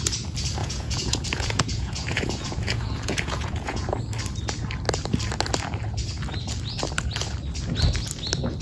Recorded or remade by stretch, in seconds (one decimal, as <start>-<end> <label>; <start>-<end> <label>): 0.0-0.6 recorded; 0.6-3.9 remade; 3.9-8.6 recorded